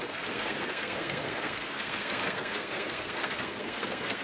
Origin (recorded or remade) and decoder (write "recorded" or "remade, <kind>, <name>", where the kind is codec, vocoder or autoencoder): remade, codec, SNAC